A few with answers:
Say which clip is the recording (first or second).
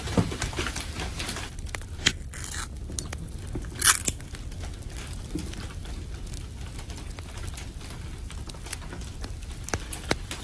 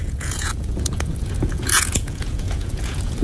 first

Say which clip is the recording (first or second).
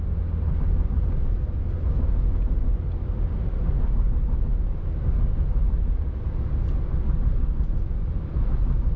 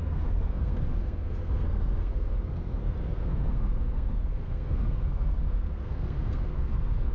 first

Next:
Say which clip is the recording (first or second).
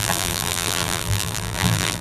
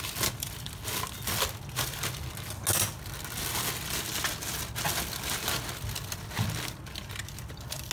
second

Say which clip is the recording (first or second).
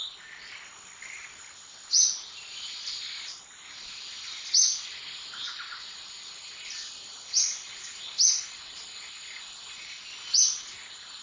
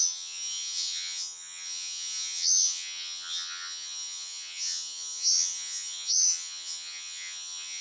first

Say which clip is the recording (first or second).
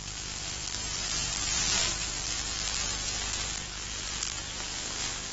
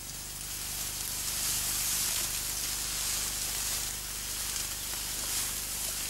second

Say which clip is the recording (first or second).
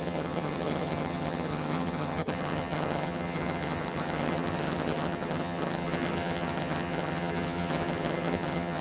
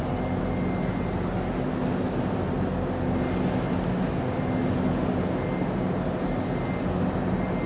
second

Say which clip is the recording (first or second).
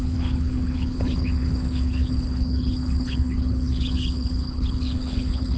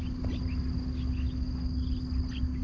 second